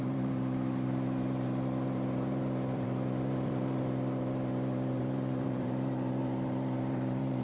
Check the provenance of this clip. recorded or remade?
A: remade